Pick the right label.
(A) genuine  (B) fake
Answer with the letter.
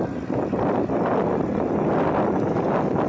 A